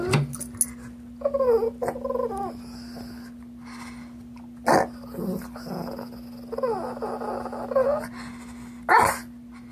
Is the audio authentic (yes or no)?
yes